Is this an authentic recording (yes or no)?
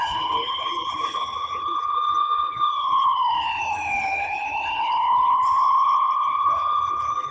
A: no